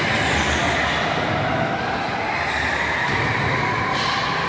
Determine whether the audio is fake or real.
real